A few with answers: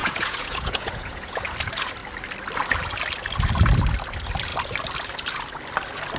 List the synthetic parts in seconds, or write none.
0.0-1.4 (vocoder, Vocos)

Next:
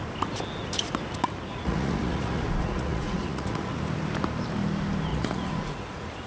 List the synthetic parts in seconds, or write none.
1.5-3.7 (vocoder, Vocos); 5.1-6.3

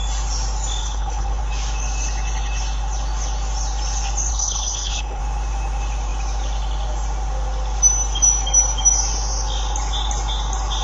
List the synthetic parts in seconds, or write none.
0.8-1.4 (codec, HILCodec); 4.3-5.2

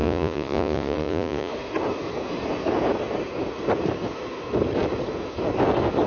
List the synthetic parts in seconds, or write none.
0.0-1.5 (vocoder, Vocos)

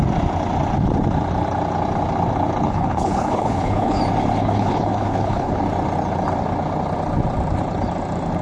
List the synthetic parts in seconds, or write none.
2.6-4.0 (codec, HILCodec); 4.4-5.6